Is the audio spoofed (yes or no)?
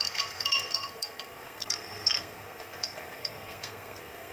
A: yes